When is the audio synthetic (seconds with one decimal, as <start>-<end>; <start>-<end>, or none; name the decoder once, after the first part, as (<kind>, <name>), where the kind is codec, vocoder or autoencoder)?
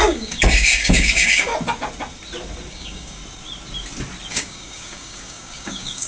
0.0-1.5 (codec, DAC); 2.7-3.2; 4.3-6.1